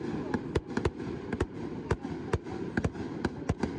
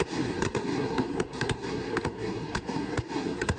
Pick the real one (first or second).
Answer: first